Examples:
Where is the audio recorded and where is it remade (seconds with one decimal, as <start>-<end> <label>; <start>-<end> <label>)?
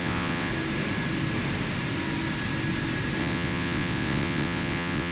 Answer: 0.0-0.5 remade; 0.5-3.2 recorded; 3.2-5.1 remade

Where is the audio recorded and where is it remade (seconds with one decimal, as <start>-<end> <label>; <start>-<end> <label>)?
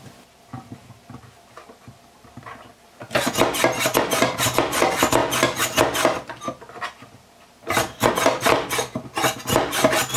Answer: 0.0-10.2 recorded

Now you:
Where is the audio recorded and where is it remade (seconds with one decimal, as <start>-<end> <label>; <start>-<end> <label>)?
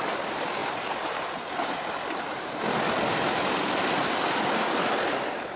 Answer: 0.0-5.6 recorded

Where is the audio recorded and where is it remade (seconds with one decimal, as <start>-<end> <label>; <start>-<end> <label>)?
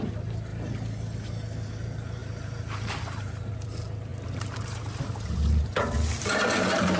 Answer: 0.0-0.5 remade; 0.5-1.7 recorded; 1.7-7.0 remade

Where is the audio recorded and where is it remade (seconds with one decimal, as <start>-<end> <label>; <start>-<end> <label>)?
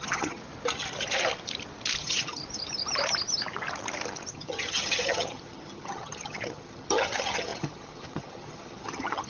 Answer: 0.0-0.4 remade; 0.4-2.0 recorded; 2.0-2.4 remade; 2.4-4.3 recorded; 4.3-9.3 remade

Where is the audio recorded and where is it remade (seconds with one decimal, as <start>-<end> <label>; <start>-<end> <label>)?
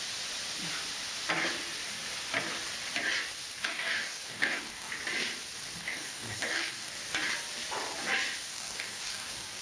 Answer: 0.0-3.6 recorded; 3.6-4.9 remade; 4.9-5.8 recorded; 5.8-6.9 remade; 6.9-8.5 recorded; 8.5-9.6 remade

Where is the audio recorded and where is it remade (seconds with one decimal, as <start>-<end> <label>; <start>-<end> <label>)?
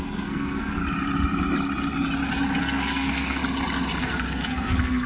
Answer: 0.0-0.8 remade; 0.8-2.6 recorded; 2.6-3.4 remade; 3.4-4.0 recorded; 4.0-5.1 remade